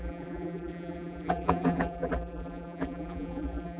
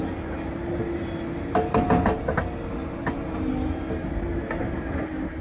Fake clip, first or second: first